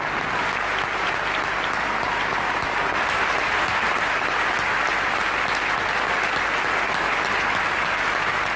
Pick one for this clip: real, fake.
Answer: fake